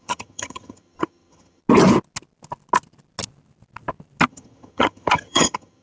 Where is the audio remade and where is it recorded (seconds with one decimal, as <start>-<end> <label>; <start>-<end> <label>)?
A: 0.0-1.6 remade; 1.6-4.3 recorded; 4.3-5.8 remade